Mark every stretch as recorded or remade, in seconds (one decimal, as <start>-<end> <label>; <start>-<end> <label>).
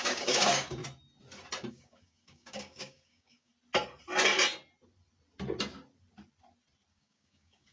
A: 0.0-0.8 remade; 0.8-1.7 recorded; 1.7-3.5 remade; 3.5-6.9 recorded; 6.9-7.7 remade